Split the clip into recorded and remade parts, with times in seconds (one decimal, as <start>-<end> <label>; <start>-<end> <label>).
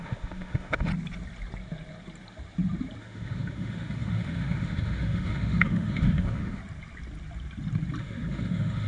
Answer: 0.0-0.9 remade; 0.9-3.0 recorded; 3.0-6.6 remade; 6.6-8.0 recorded; 8.0-8.9 remade